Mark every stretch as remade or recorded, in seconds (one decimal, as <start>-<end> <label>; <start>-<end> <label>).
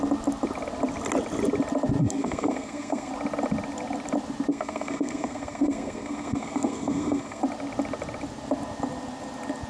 0.0-2.0 recorded; 2.0-3.1 remade; 3.1-4.5 recorded; 4.5-7.4 remade; 7.4-9.7 recorded